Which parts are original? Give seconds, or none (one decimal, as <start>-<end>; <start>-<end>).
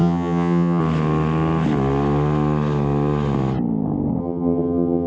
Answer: 0.8-4.2